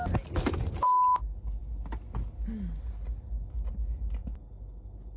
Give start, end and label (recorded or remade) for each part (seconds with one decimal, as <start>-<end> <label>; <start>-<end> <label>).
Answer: 0.0-5.2 recorded

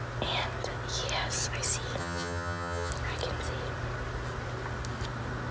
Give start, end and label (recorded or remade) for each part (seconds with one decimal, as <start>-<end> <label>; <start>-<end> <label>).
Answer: 0.0-2.0 recorded; 2.0-2.9 remade; 2.9-5.5 recorded

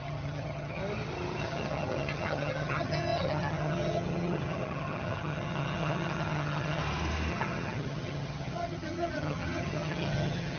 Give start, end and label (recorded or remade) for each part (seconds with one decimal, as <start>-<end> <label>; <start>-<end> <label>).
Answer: 0.0-0.8 remade; 0.8-1.4 recorded; 1.4-6.8 remade; 6.8-7.3 recorded; 7.3-10.6 remade

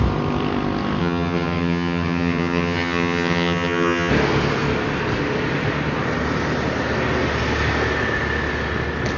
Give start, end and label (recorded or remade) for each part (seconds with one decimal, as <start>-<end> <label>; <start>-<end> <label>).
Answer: 0.0-1.0 recorded; 1.0-4.1 remade; 4.1-9.2 recorded

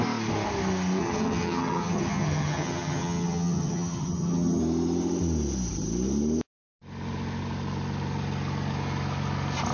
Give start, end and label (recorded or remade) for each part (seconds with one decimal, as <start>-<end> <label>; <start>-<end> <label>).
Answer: 0.0-1.0 recorded; 1.0-4.6 remade; 4.6-9.7 recorded

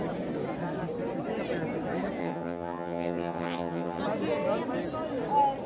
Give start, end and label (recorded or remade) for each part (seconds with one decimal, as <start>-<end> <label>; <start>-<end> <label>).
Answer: 0.0-2.2 recorded; 2.2-4.0 remade; 4.0-5.7 recorded

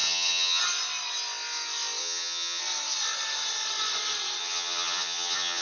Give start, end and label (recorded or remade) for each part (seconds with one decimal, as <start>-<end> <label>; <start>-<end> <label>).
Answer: 0.0-0.6 remade; 0.6-2.0 recorded; 2.0-2.6 remade; 2.6-4.4 recorded; 4.4-5.6 remade